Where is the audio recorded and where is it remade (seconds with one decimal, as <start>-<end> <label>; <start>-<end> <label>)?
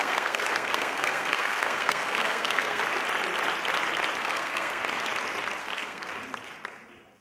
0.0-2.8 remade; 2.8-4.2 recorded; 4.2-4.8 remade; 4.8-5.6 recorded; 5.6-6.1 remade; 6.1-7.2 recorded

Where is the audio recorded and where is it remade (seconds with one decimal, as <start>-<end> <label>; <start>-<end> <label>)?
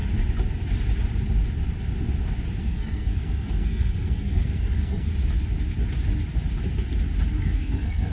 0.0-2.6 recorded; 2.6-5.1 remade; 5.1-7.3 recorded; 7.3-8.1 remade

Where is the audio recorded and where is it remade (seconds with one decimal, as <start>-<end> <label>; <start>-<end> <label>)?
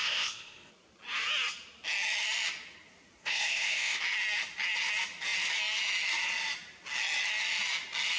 0.0-0.7 remade; 0.7-3.2 recorded; 3.2-4.0 remade; 4.0-8.2 recorded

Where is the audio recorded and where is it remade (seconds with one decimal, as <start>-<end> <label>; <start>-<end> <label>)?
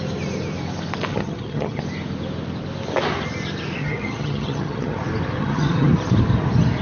0.0-1.1 recorded; 1.1-1.8 remade; 1.8-3.8 recorded; 3.8-5.0 remade; 5.0-5.4 recorded; 5.4-5.9 remade; 5.9-6.8 recorded